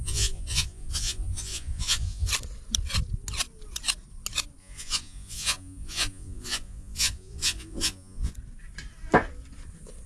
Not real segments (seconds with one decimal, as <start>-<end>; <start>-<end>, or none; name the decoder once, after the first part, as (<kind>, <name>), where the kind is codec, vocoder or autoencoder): 0.0-2.3 (vocoder, Vocos); 4.6-8.3